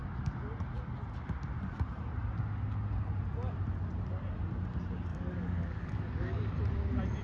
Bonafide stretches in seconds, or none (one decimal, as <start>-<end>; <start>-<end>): 0.0-5.1; 6.6-7.2